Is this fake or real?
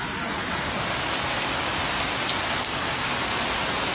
real